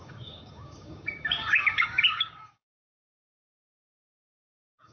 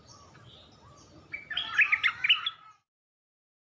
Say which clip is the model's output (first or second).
first